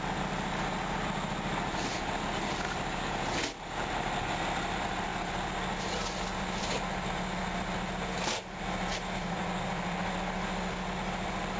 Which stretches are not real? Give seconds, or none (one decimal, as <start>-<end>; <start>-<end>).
none